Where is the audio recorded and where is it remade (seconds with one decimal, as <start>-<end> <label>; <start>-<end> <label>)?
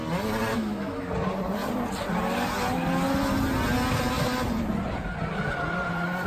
0.0-0.5 recorded; 0.5-1.1 remade; 1.1-6.3 recorded